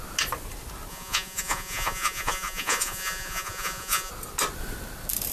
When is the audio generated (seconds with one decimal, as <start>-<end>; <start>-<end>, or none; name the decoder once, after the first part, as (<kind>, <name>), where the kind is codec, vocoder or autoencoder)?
0.9-4.1 (vocoder, Vocos)